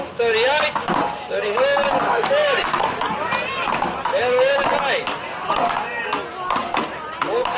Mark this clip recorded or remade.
recorded